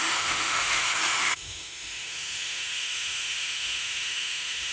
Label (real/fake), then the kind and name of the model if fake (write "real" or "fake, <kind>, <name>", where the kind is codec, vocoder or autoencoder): fake, autoencoder, DAC-VAE